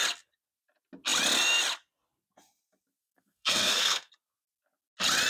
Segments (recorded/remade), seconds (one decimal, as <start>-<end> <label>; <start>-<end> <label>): 0.0-3.0 recorded; 3.0-4.1 remade; 4.1-5.3 recorded